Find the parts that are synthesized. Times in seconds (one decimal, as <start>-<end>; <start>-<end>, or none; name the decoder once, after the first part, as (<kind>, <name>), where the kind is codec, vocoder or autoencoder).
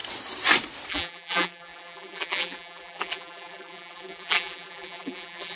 0.9-5.6 (vocoder, BigVGAN v2)